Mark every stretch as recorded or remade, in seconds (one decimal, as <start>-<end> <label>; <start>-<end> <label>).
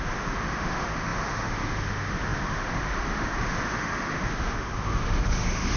0.0-5.8 remade